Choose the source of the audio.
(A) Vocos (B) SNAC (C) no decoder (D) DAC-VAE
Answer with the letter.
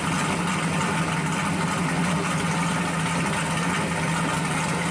C